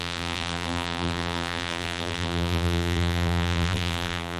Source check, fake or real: fake